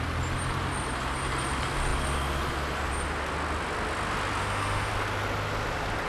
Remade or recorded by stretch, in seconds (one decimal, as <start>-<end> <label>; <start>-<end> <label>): 0.0-4.4 recorded; 4.4-4.9 remade; 4.9-6.1 recorded